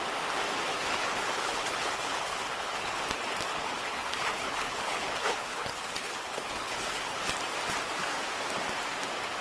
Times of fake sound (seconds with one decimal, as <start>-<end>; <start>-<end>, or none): 0.7-3.0; 3.5-7.3